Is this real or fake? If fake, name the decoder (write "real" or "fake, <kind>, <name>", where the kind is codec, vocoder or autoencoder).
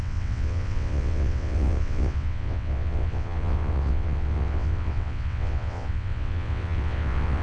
fake, vocoder, WaveNeXt